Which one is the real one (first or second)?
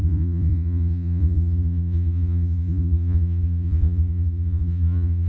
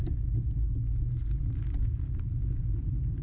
second